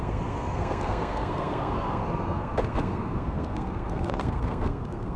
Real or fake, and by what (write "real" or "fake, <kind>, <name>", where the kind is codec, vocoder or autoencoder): fake, codec, SNAC